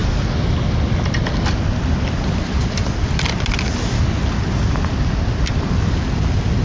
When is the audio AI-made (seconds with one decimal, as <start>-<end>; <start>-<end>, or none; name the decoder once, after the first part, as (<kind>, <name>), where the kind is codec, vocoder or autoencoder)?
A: none

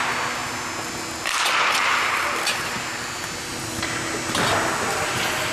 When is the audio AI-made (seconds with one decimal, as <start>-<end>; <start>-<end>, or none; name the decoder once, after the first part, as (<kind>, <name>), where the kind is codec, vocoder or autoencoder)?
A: none